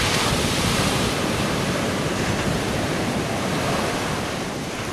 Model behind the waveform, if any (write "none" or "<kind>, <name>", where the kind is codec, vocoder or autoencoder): vocoder, BigVGAN v2